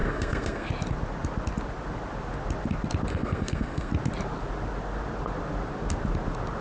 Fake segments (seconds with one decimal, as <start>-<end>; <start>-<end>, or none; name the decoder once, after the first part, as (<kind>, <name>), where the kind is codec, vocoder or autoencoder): 0.0-0.7 (codec, SNAC); 3.1-3.9